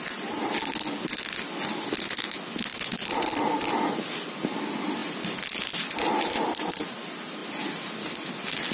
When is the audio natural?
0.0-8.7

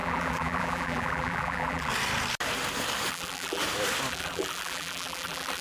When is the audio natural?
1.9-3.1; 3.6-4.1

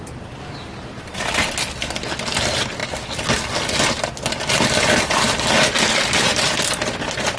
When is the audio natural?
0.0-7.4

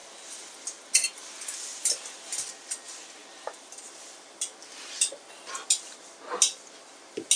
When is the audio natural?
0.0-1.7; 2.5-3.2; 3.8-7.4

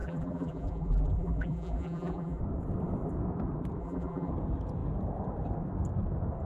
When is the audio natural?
2.4-3.8; 4.3-6.5

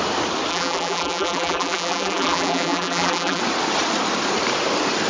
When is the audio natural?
0.0-0.5; 3.4-5.1